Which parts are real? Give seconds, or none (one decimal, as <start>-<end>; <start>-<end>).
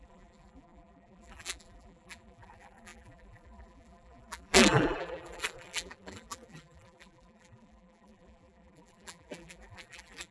none